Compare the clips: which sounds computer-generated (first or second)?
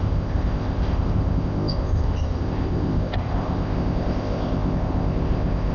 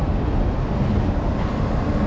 first